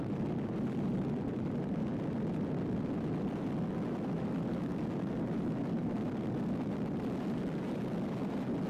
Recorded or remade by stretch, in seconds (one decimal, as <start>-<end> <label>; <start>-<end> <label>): 0.0-4.5 recorded; 4.5-5.1 remade; 5.1-8.7 recorded